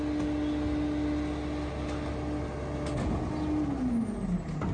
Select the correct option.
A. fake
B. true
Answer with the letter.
B